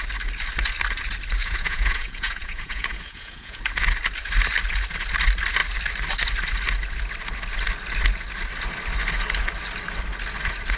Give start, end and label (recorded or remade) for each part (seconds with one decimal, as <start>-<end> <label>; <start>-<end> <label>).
0.0-1.4 recorded; 1.4-3.6 remade; 3.6-10.8 recorded

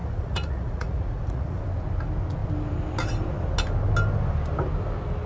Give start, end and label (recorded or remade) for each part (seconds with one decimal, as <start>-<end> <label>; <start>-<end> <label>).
0.0-1.6 remade; 1.6-5.3 recorded